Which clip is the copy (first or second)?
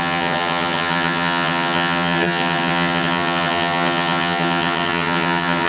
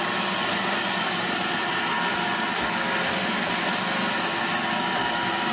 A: first